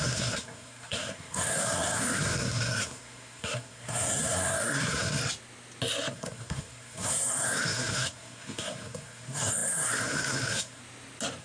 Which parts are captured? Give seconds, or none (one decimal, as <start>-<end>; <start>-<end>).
5.2-6.1; 10.8-11.4